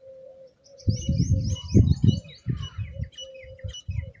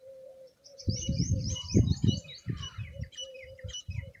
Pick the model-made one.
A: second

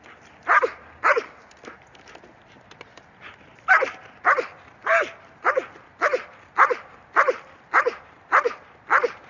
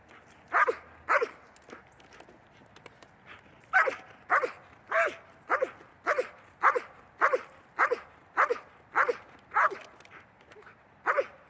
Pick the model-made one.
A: first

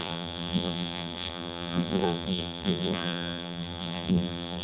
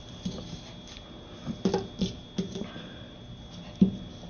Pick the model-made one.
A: first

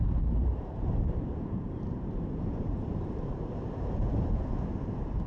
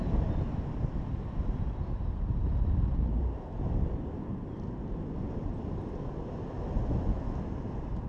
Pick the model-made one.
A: first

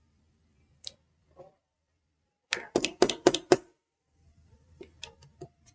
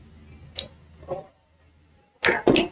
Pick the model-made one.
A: first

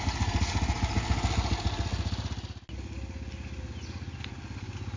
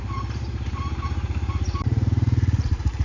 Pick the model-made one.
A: second